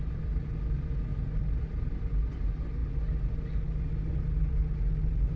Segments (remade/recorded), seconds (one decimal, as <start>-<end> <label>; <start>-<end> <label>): 0.0-5.4 recorded